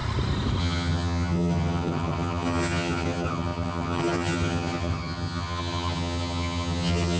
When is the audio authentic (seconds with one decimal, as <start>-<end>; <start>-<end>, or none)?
0.0-0.6